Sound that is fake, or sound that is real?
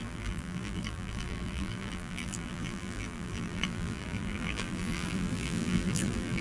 fake